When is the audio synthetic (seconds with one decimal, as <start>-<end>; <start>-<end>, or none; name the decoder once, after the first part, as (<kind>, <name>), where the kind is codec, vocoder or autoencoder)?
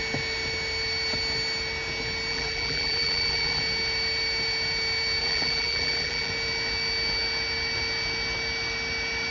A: 2.3-3.6 (vocoder, BigVGAN v2); 5.2-6.3